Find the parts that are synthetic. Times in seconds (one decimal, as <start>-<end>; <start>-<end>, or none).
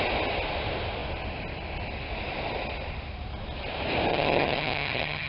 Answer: 4.1-5.3